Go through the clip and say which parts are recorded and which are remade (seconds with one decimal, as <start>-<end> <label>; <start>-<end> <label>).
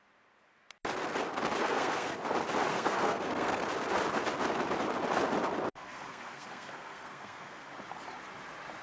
0.0-1.6 recorded; 1.6-2.1 remade; 2.1-2.7 recorded; 2.7-3.6 remade; 3.6-5.7 recorded; 5.7-7.7 remade; 7.7-8.8 recorded